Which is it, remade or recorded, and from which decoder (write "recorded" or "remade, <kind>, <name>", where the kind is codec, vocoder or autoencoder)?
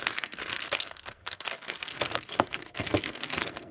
remade, codec, SNAC